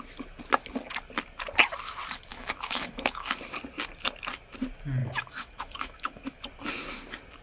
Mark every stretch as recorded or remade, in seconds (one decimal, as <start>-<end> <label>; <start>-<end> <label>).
0.0-2.3 recorded; 2.3-3.3 remade; 3.3-5.0 recorded; 5.0-6.4 remade; 6.4-7.4 recorded